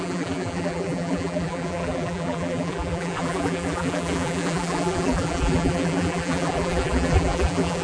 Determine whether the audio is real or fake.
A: fake